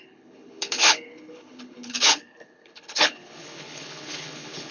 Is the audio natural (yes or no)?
no